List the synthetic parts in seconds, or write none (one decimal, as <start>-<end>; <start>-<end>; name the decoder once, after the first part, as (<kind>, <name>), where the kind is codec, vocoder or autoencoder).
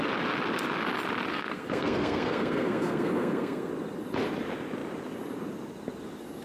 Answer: 1.3-3.7 (codec, SNAC)